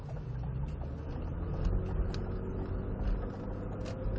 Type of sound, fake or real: real